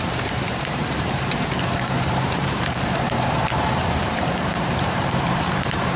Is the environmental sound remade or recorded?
remade